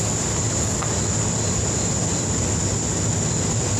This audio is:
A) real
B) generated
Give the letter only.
A